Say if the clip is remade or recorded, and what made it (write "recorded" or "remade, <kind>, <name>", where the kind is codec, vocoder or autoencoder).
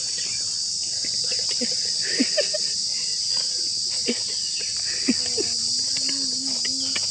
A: recorded